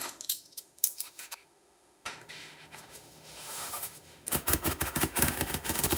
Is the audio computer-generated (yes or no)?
yes